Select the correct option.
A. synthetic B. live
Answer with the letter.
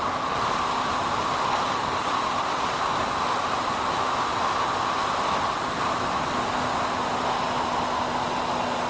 B